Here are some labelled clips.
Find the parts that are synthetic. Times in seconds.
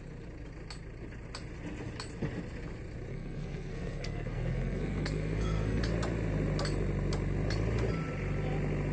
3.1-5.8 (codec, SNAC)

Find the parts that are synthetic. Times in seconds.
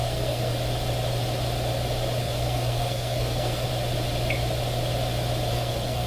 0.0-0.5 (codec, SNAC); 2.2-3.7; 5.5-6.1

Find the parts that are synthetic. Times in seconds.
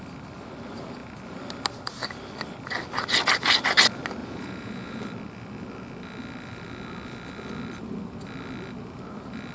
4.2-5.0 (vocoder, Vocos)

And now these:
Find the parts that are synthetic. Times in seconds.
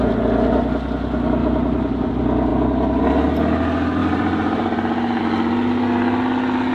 1.4-2.1 (vocoder, BigVGAN v2); 4.0-5.2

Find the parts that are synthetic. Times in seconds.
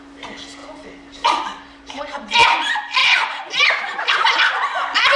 0.6-1.9 (vocoder, BigVGAN v2); 3.0-3.7